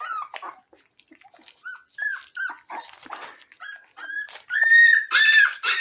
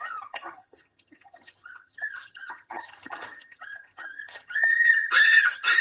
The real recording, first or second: first